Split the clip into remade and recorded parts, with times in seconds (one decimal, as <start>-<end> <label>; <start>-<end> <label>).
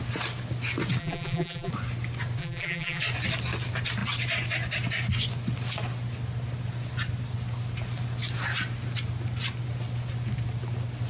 0.0-1.0 recorded; 1.0-1.7 remade; 1.7-2.4 recorded; 2.4-3.0 remade; 3.0-11.1 recorded